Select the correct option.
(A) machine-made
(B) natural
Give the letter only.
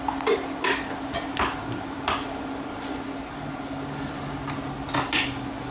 B